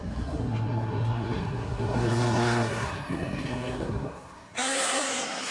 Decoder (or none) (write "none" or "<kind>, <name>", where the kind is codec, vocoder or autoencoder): codec, SNAC